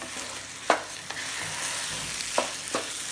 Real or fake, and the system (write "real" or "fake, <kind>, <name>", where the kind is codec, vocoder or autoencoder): real